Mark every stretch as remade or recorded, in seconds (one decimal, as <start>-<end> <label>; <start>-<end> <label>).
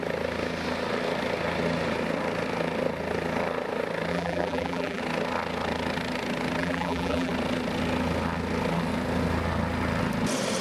0.0-4.1 recorded; 4.1-5.0 remade; 5.0-6.6 recorded; 6.6-7.3 remade; 7.3-10.6 recorded